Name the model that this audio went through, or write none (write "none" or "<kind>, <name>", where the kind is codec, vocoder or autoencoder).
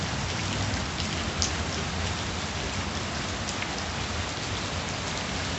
none